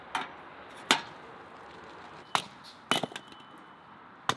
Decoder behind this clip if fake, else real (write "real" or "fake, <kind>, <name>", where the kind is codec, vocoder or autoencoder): real